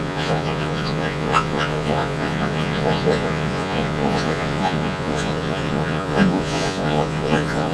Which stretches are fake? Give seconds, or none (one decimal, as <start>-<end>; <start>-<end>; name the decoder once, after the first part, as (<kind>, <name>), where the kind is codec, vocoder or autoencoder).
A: 0.0-7.7 (vocoder, Vocos)